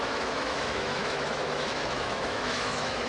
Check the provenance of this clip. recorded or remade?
remade